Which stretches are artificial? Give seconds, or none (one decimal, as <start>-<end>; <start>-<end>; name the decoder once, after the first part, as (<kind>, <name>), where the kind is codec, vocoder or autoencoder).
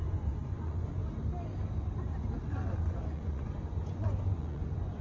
0.0-1.0 (vocoder, Vocos); 2.8-5.0